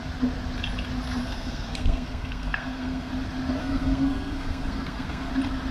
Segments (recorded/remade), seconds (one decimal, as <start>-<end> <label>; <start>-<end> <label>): 0.0-1.2 recorded; 1.2-3.1 remade; 3.1-3.6 recorded; 3.6-5.3 remade; 5.3-5.7 recorded